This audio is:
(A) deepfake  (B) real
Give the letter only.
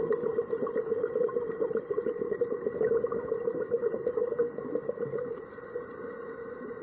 B